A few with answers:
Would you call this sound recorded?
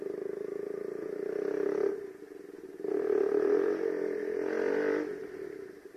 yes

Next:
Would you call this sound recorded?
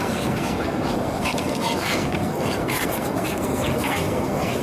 no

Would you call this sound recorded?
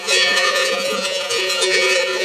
no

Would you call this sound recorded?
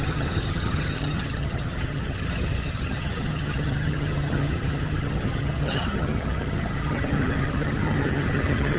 no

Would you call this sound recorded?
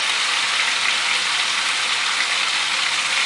yes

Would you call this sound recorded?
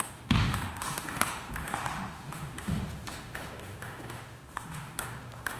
no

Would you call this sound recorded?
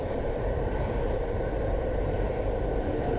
no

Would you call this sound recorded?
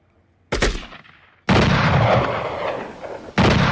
yes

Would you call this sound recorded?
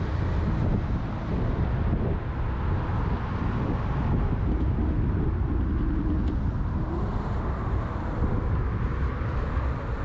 yes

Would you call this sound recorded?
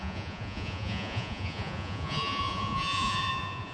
no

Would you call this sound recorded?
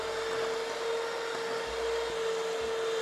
yes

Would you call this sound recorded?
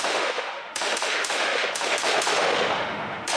no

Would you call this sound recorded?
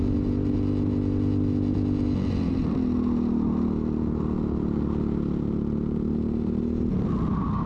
yes